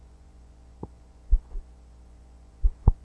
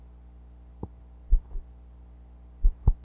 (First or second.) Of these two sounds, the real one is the second